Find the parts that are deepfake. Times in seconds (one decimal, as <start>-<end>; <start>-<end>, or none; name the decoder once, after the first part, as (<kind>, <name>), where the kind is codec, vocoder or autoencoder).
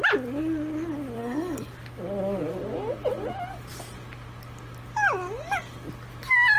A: 1.2-1.7 (codec, SNAC)